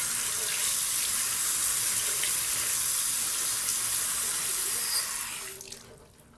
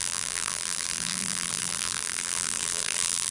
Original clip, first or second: first